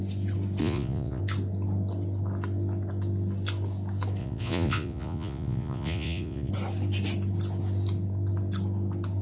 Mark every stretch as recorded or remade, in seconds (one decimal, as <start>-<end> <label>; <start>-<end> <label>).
0.0-0.6 recorded; 0.6-1.2 remade; 1.2-4.2 recorded; 4.2-6.5 remade; 6.5-9.2 recorded